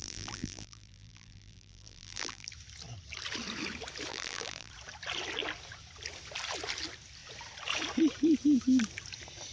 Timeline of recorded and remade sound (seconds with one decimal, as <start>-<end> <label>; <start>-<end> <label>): 0.0-2.5 remade; 2.5-4.1 recorded; 4.1-4.7 remade; 4.7-9.5 recorded